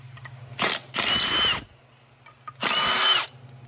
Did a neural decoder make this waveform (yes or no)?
no